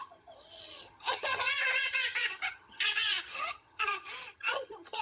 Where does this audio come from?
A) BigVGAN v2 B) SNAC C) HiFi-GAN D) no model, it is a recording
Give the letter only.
C